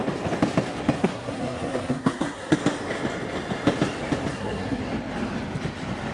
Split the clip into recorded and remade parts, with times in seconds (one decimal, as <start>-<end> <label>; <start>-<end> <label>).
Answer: 0.0-1.0 recorded; 1.0-2.6 remade; 2.6-4.3 recorded; 4.3-4.8 remade; 4.8-6.1 recorded